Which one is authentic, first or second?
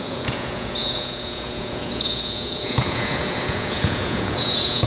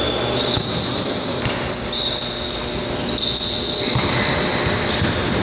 second